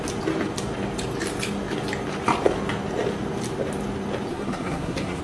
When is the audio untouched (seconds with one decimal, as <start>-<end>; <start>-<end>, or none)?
0.0-4.3